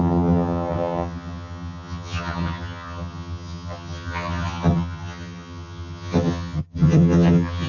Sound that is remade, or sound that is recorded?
remade